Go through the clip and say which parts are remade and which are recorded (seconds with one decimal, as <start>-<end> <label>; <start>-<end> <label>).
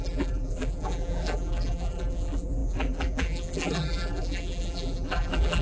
0.0-5.6 remade